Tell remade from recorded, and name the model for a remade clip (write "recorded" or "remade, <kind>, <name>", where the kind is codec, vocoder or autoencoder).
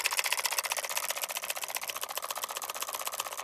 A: recorded